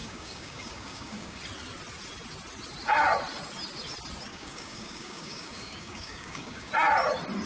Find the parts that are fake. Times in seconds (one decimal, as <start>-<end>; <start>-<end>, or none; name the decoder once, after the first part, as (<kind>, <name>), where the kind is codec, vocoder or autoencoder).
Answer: 0.0-1.4 (codec, DAC); 4.3-6.7